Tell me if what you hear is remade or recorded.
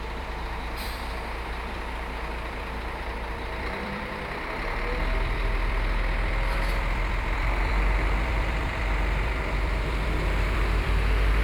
remade